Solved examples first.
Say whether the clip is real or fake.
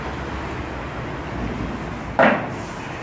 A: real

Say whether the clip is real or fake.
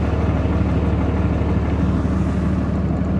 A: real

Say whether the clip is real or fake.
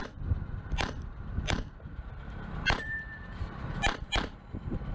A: fake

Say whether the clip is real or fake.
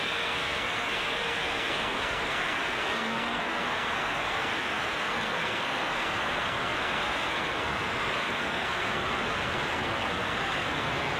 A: fake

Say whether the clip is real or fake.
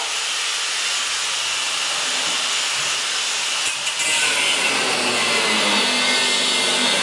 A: real